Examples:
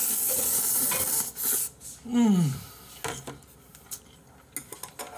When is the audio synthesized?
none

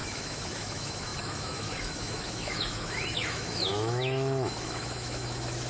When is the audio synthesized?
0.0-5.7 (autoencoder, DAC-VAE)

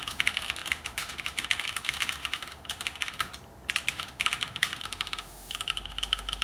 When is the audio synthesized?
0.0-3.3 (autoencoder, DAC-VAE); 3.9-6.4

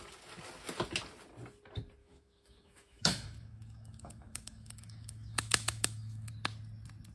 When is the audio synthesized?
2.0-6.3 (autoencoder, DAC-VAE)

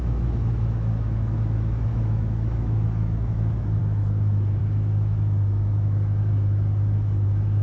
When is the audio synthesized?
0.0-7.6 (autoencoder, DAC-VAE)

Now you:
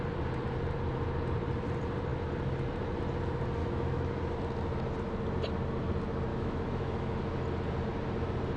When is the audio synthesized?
3.6-4.1 (autoencoder, DAC-VAE); 6.3-7.2